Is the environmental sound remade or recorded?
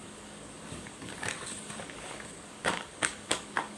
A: remade